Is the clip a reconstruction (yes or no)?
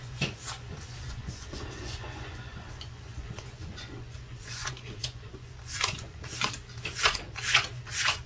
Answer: yes